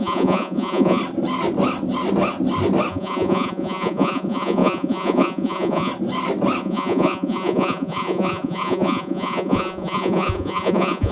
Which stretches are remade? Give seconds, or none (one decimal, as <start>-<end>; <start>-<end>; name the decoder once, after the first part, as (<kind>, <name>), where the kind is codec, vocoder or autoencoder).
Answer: 0.0-1.0 (vocoder, Vocos); 2.9-5.9; 6.6-11.1